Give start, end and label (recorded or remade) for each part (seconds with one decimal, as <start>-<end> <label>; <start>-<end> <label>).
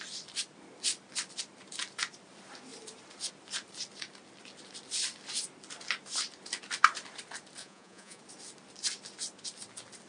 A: 0.0-7.6 recorded; 7.6-8.2 remade; 8.2-10.1 recorded